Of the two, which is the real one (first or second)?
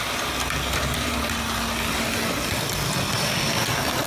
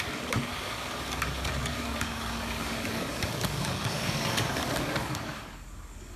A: first